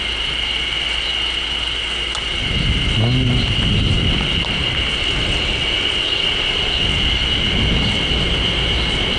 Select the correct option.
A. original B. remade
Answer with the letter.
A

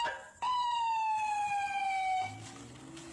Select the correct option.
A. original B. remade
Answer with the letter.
A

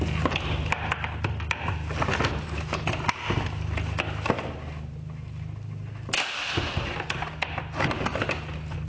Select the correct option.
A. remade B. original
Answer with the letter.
B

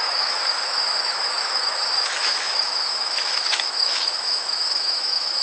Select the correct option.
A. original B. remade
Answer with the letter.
B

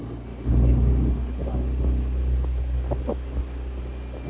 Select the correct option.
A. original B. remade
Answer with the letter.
A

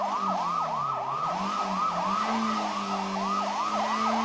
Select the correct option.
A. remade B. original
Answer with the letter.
B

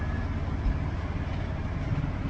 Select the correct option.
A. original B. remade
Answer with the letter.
A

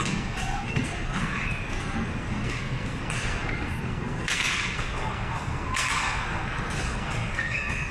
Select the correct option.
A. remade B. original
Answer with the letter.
A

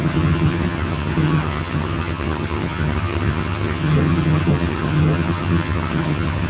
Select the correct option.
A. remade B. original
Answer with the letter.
A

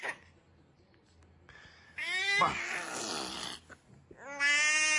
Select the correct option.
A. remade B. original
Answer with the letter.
B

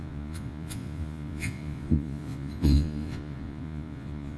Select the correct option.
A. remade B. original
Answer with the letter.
A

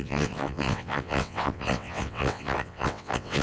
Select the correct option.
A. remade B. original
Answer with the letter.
A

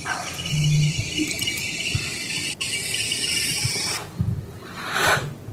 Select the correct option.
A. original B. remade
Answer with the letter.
A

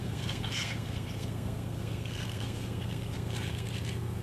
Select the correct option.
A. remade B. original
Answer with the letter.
A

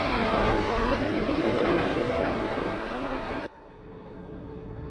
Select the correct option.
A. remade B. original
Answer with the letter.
A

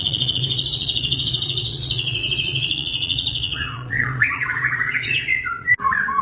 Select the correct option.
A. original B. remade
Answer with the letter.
B